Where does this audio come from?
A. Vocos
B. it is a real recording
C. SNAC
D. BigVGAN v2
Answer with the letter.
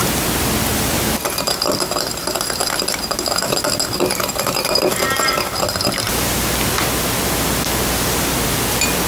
B